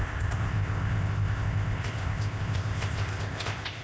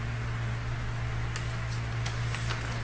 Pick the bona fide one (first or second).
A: second